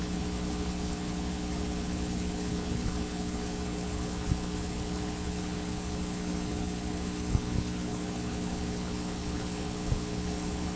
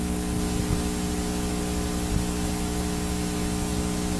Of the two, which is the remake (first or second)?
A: first